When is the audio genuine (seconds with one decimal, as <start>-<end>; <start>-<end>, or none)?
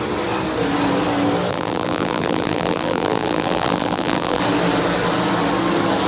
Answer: 0.0-1.5; 4.4-6.1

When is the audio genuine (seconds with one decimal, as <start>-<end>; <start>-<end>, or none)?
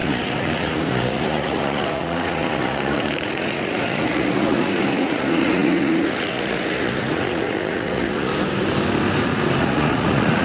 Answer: 8.3-9.6